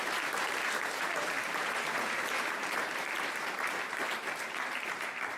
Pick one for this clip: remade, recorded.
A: remade